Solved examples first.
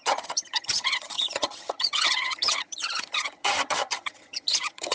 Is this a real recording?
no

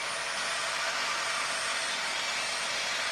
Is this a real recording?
yes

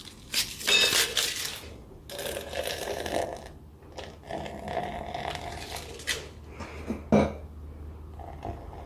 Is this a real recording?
yes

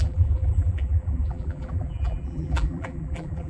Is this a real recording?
no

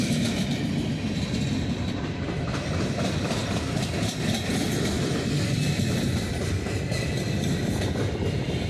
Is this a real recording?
no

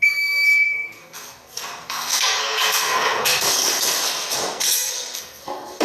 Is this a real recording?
no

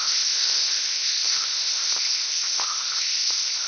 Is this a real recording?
no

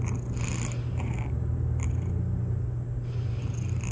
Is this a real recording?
yes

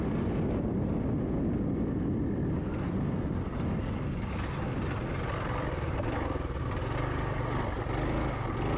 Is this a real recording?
yes